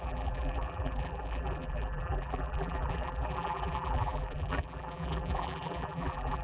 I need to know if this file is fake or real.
fake